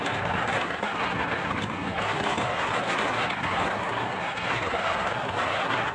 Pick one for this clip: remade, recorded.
remade